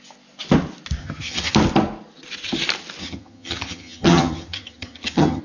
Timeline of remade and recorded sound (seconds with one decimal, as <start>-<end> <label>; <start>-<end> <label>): 0.0-1.0 recorded; 1.0-1.5 remade; 1.5-3.0 recorded; 3.0-5.4 remade